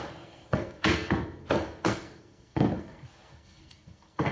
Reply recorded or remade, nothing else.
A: remade